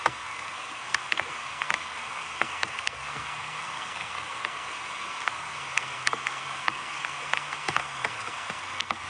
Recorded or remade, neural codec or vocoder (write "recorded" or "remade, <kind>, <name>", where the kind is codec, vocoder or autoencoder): remade, codec, SNAC